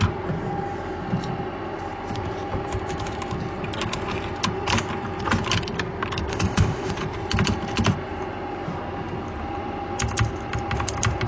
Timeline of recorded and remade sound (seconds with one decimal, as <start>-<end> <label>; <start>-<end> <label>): 0.0-6.3 recorded; 6.3-6.9 remade; 6.9-11.3 recorded